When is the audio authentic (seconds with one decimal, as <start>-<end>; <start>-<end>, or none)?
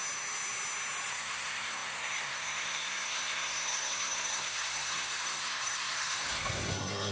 0.0-1.1